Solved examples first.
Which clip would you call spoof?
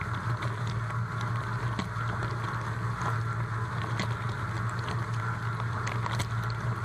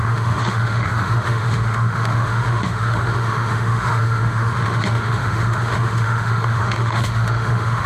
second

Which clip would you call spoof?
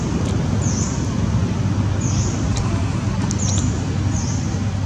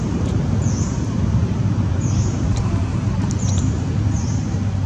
second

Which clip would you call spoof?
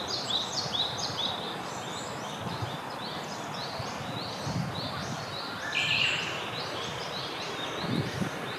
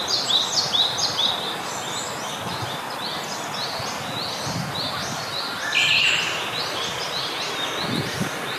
first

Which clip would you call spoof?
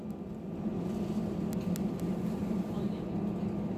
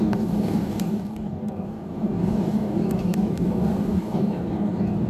second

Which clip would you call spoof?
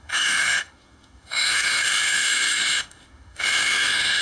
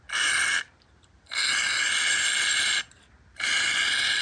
first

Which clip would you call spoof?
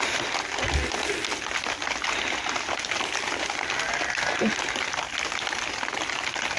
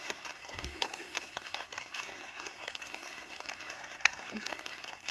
second